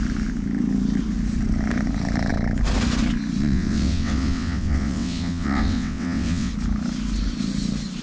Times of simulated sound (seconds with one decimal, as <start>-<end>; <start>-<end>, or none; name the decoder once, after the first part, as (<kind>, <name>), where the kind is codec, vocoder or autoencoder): 3.4-6.5 (vocoder, WaveNeXt)